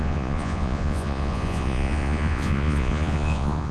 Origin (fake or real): fake